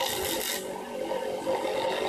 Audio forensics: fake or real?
real